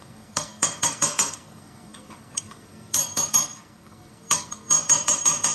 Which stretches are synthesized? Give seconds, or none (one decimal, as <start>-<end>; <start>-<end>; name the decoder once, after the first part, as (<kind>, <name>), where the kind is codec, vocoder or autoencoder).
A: 0.0-5.5 (codec, SNAC)